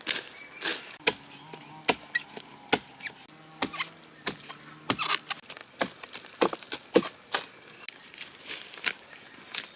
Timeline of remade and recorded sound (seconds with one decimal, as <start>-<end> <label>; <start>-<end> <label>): 0.0-9.8 recorded